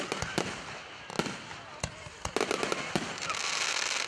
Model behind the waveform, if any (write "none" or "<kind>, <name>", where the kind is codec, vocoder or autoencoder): none